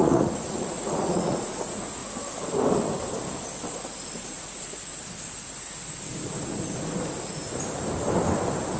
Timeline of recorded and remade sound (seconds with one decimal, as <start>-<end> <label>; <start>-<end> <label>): 0.0-2.0 remade; 2.0-4.3 recorded; 4.3-4.9 remade; 4.9-8.8 recorded

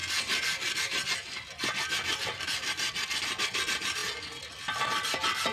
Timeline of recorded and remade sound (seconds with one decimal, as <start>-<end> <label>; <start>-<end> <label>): 0.0-5.5 recorded